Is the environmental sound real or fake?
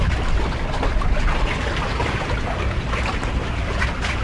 real